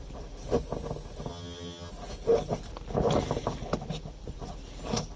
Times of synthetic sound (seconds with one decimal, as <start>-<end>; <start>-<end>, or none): 1.3-1.9